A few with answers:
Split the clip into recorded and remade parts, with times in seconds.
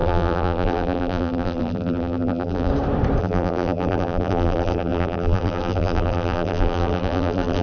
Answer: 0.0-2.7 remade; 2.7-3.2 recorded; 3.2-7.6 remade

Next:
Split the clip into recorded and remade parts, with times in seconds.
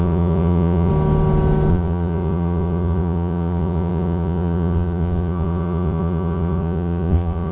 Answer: 0.0-0.9 remade; 0.9-1.7 recorded; 1.7-7.5 remade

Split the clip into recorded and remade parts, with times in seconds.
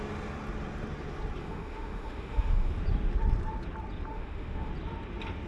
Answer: 0.0-1.4 recorded; 1.4-2.7 remade; 2.7-4.1 recorded; 4.1-4.7 remade; 4.7-5.5 recorded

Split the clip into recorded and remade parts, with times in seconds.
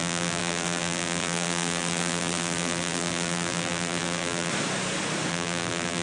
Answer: 0.0-4.5 remade; 4.5-5.3 recorded; 5.3-6.0 remade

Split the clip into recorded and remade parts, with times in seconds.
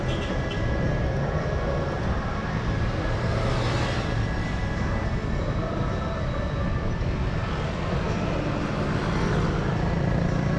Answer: 0.0-10.6 recorded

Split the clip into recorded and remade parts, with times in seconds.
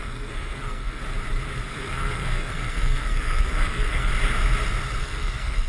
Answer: 0.0-1.0 remade; 1.0-1.7 recorded; 1.7-4.1 remade; 4.1-5.0 recorded; 5.0-5.7 remade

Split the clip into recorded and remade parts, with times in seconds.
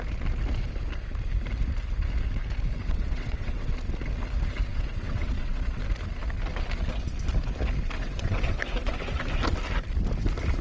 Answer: 0.0-2.8 recorded; 2.8-3.7 remade; 3.7-4.7 recorded; 4.7-5.8 remade; 5.8-8.0 recorded; 8.0-8.9 remade; 8.9-10.6 recorded